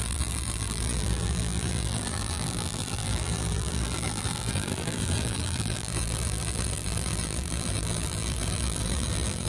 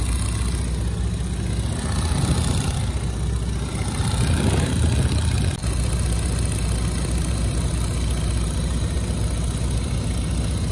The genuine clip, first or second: second